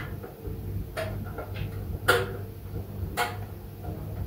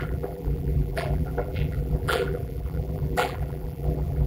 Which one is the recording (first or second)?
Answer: first